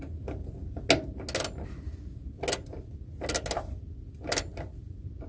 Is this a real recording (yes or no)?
yes